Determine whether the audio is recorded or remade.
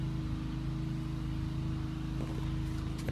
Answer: recorded